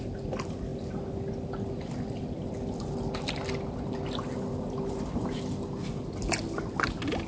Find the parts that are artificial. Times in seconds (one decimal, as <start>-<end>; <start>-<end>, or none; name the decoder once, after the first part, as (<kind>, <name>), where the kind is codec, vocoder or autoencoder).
none

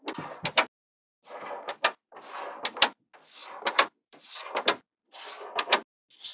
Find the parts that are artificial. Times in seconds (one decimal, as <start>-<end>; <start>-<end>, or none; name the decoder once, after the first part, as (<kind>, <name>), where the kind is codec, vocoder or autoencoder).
0.9-2.6 (vocoder, BigVGAN v2); 3.4-4.2

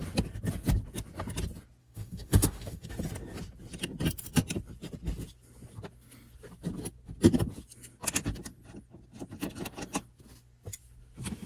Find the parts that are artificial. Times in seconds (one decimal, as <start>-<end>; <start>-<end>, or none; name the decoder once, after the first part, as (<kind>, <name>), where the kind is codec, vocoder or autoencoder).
1.8-2.9 (autoencoder, DAC-VAE)